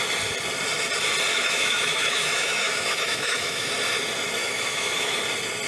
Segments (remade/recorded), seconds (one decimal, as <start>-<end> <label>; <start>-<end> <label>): 0.0-1.3 recorded; 1.3-3.7 remade; 3.7-4.4 recorded; 4.4-5.2 remade; 5.2-5.7 recorded